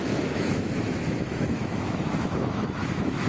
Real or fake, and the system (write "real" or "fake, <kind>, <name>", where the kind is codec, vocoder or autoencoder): fake, autoencoder, DAC-VAE